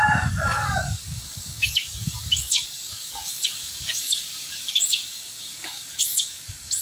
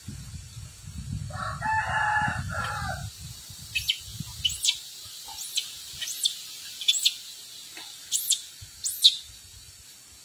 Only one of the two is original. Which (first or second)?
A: second